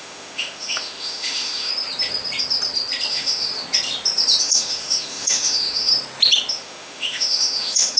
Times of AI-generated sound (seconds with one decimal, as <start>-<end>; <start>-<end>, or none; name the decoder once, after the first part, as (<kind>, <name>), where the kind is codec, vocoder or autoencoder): 0.0-1.7 (autoencoder, DAC-VAE); 3.1-3.5; 4.4-5.9; 6.5-8.0